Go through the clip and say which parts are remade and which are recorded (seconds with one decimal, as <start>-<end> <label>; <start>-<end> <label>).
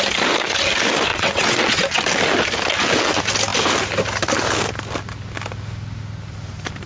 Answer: 0.0-1.1 recorded; 1.1-2.0 remade; 2.0-6.9 recorded